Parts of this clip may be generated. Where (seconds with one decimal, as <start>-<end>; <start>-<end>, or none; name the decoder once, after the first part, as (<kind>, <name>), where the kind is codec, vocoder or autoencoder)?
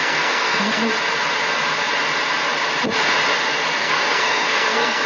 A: 0.0-0.8 (codec, SNAC); 3.8-5.1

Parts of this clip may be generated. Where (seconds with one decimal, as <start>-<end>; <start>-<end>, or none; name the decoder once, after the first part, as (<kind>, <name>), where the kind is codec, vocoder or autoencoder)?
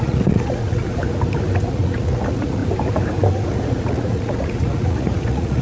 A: 0.0-1.0 (vocoder, Vocos); 1.6-2.6; 3.5-5.6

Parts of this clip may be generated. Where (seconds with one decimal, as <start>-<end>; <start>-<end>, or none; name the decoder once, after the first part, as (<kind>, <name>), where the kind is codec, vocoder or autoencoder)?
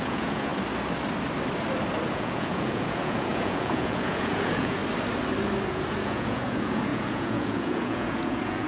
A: 0.0-0.5 (vocoder, Vocos); 2.1-4.8; 5.7-8.7